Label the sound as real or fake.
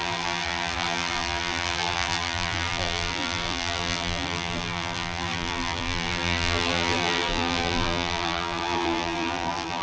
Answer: fake